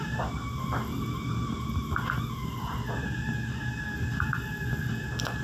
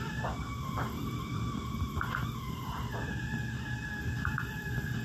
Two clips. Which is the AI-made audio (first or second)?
second